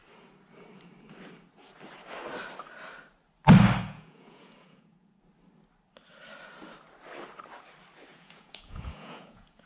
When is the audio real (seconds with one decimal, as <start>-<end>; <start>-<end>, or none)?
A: 0.0-3.8; 5.2-8.1